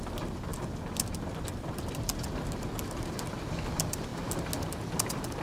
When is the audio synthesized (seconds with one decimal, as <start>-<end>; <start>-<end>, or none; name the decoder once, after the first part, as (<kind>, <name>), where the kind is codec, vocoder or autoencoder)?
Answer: 0.0-4.1 (vocoder, BigVGAN v2)